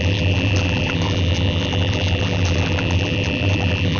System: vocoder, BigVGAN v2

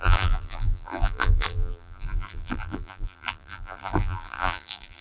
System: vocoder, BigVGAN v2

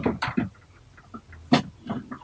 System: none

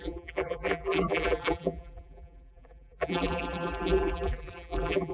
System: vocoder, BigVGAN v2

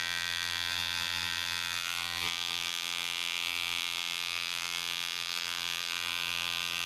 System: vocoder, BigVGAN v2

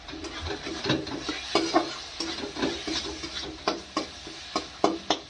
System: none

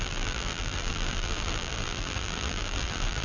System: vocoder, BigVGAN v2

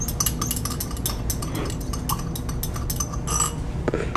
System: none